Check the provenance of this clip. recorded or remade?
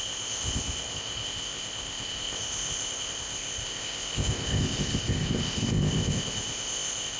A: remade